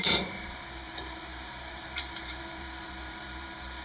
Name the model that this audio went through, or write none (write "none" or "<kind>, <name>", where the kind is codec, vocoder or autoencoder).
vocoder, BigVGAN v2